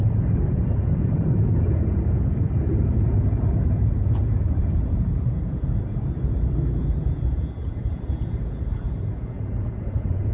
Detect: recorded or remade remade